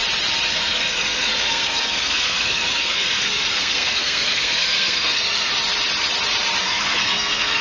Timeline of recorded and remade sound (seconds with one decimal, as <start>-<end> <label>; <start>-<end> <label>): 0.0-0.5 recorded; 0.5-5.5 remade; 5.5-6.6 recorded; 6.6-7.6 remade